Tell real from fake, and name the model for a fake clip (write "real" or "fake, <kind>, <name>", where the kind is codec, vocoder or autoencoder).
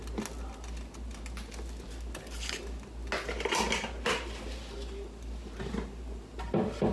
real